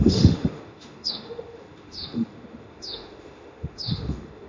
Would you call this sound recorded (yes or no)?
no